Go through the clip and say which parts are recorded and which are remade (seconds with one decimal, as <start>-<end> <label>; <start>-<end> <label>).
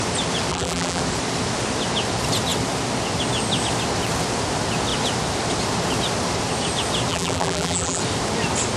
0.0-0.5 recorded; 0.5-1.0 remade; 1.0-7.1 recorded; 7.1-8.0 remade; 8.0-8.8 recorded